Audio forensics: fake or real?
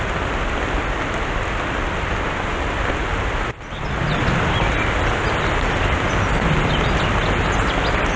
real